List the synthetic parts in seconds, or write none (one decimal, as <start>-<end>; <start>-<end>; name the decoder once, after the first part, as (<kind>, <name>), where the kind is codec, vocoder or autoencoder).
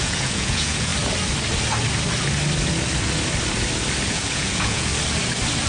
0.0-0.9 (vocoder, Vocos); 4.1-4.9